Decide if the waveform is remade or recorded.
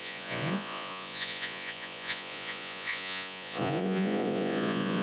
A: remade